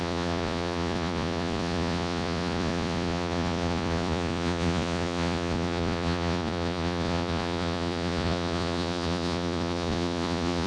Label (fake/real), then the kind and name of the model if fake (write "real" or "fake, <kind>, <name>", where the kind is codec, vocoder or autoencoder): fake, vocoder, Vocos